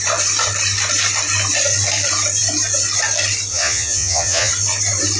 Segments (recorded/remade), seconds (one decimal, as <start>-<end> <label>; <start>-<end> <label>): 0.0-3.5 recorded; 3.5-4.5 remade; 4.5-5.2 recorded